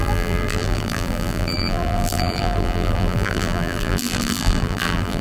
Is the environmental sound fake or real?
fake